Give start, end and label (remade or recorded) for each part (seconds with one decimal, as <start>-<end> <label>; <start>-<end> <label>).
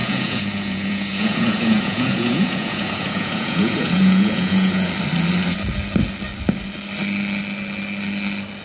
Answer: 0.0-4.9 remade; 4.9-8.6 recorded